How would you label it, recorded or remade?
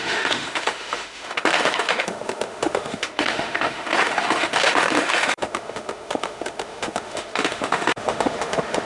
remade